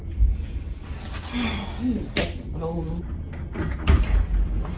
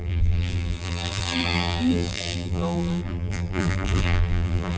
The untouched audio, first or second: first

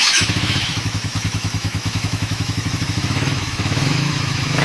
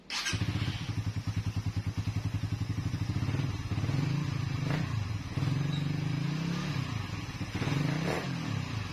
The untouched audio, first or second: second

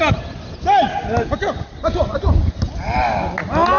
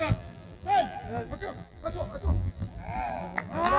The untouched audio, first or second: first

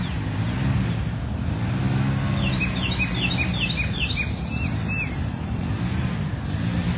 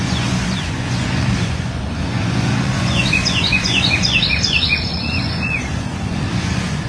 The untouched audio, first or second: first